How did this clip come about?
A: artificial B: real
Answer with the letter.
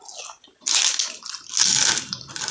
B